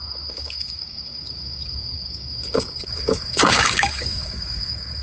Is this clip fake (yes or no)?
yes